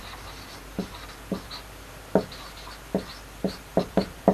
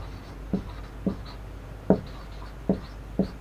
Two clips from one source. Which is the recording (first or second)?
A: second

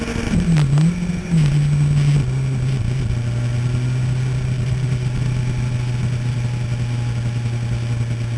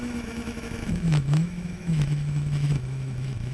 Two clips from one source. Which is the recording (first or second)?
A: first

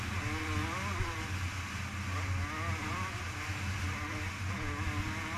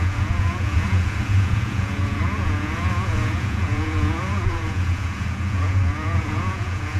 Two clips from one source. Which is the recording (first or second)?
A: first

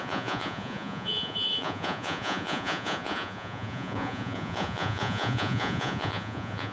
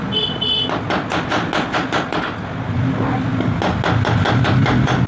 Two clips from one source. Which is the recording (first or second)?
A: second